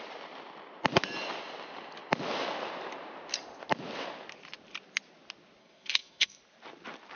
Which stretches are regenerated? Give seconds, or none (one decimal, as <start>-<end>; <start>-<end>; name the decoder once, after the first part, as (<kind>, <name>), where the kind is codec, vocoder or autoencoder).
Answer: 5.6-6.4 (codec, SNAC)